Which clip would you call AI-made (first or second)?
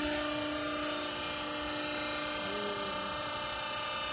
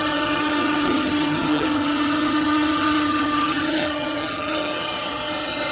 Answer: second